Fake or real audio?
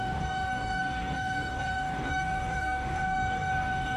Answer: fake